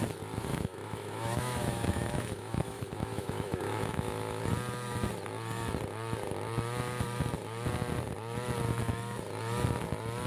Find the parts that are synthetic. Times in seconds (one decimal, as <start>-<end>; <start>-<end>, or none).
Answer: 0.5-4.4